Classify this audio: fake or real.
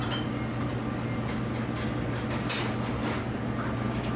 real